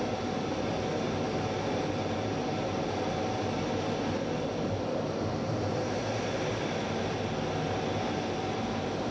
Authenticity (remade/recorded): recorded